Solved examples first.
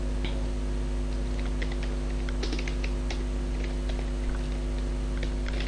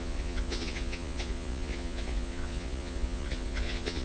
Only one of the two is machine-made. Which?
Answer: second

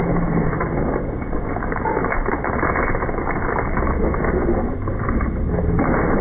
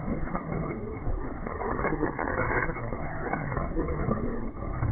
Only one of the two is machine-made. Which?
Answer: second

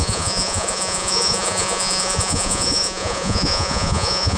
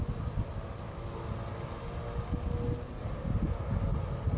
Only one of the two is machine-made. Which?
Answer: first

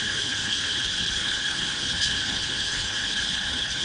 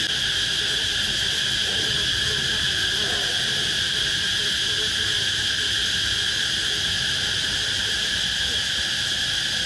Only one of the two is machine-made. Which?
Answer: first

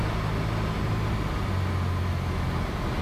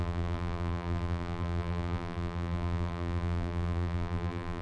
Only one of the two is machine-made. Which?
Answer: second